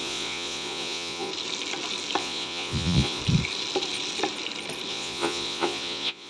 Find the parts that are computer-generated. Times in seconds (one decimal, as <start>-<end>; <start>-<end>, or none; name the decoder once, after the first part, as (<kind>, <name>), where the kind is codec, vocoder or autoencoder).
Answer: 0.0-1.3 (vocoder, Vocos); 2.2-3.2; 4.9-6.3